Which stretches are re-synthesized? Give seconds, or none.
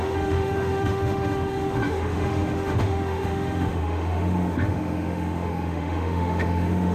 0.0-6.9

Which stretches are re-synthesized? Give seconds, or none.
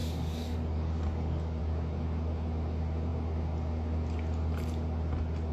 0.0-1.6